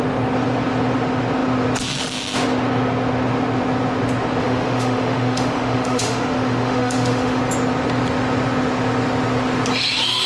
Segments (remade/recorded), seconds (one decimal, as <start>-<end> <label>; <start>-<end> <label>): 0.0-4.4 recorded; 4.4-7.4 remade; 7.4-10.3 recorded